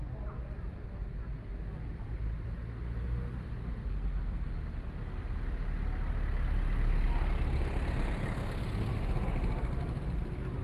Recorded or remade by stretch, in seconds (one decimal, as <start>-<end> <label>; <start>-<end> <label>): 0.0-3.9 recorded; 3.9-4.5 remade; 4.5-10.6 recorded